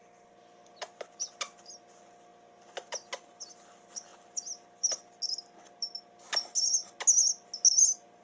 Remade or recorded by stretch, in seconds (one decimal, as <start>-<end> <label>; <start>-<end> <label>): 0.0-8.2 recorded